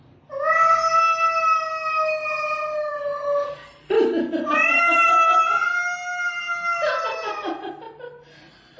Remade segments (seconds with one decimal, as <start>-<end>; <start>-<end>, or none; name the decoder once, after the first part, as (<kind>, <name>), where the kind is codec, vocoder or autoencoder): none